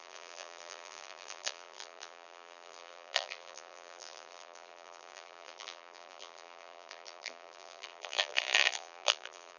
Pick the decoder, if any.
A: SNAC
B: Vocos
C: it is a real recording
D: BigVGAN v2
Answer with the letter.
D